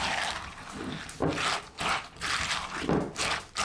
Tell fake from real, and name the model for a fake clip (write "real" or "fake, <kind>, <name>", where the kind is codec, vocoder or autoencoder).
real